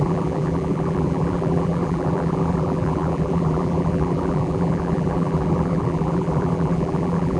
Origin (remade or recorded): remade